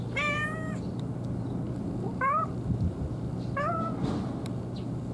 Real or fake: real